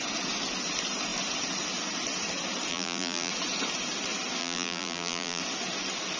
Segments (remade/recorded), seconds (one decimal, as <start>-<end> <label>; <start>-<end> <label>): 0.0-2.7 recorded; 2.7-3.3 remade; 3.3-4.4 recorded; 4.4-5.4 remade; 5.4-6.2 recorded